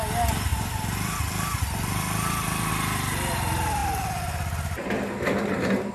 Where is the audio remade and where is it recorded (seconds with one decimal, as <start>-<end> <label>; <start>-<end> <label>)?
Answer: 0.0-0.5 recorded; 0.5-2.7 remade; 2.7-5.9 recorded